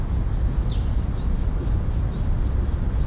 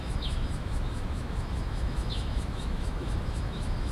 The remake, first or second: second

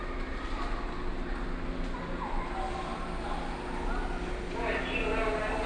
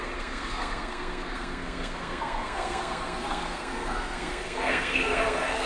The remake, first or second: second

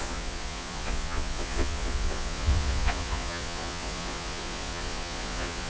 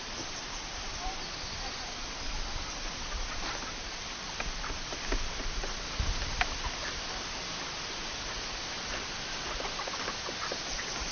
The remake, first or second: first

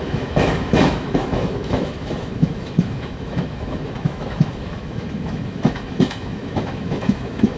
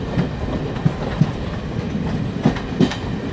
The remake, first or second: first